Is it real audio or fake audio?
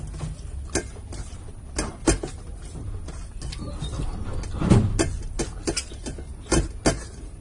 real